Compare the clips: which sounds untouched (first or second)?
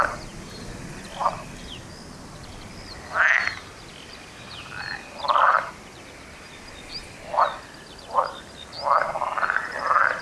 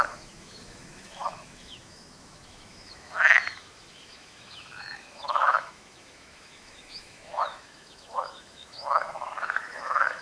first